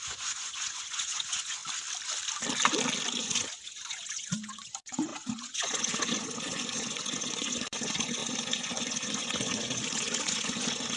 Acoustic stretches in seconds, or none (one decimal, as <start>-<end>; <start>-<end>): 1.6-3.2